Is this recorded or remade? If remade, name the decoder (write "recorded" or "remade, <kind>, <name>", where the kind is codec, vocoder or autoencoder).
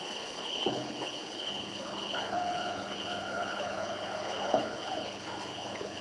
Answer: remade, codec, HILCodec